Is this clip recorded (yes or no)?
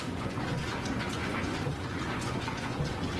no